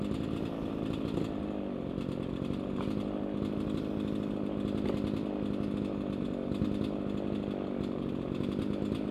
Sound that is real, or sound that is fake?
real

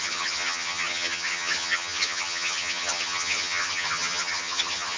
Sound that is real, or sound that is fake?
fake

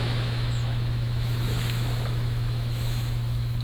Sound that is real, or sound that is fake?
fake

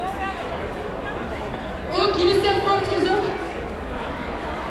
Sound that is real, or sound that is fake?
fake